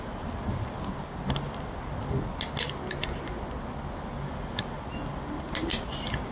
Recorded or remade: recorded